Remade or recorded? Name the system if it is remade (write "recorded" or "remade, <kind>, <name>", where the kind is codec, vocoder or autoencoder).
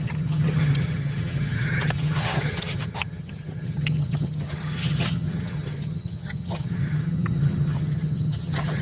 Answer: remade, vocoder, HiFi-GAN